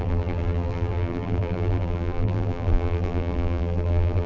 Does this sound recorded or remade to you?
remade